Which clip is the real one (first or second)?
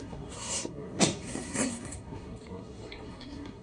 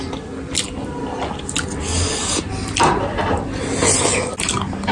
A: second